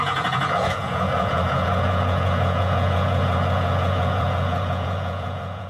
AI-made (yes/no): yes